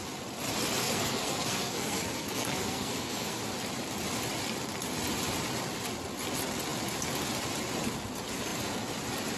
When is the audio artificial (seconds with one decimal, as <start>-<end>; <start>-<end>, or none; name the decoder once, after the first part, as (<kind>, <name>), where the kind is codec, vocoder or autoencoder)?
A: 0.8-3.4 (codec, SNAC)